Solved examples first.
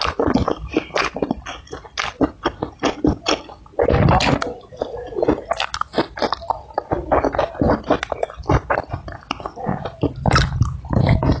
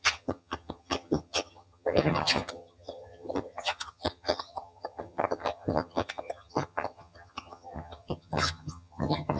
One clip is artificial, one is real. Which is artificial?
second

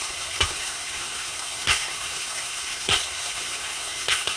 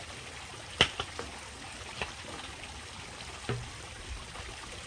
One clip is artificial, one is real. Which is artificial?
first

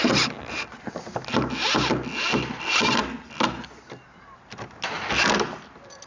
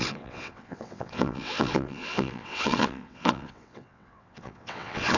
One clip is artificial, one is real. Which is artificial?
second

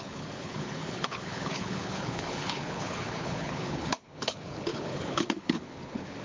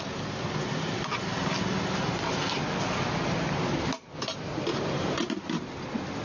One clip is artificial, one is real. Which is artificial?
first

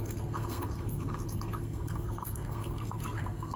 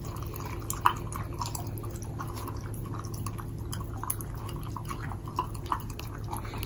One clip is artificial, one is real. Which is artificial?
first